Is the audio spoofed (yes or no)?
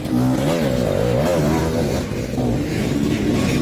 no